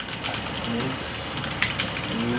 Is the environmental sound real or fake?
real